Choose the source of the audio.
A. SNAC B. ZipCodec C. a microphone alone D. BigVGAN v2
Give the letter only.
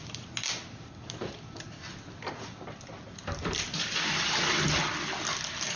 C